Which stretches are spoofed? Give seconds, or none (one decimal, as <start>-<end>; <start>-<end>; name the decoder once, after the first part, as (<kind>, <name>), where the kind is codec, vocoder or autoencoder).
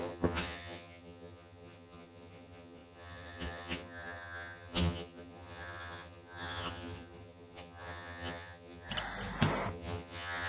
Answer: 0.0-8.9 (vocoder, HiFi-GAN); 9.7-10.5